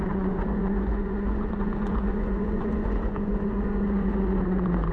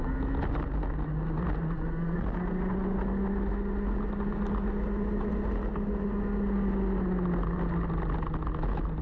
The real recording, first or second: second